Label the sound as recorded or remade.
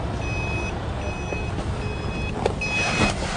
recorded